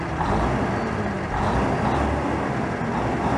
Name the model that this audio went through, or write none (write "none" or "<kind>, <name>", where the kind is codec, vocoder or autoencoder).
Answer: none